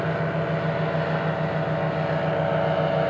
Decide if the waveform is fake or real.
real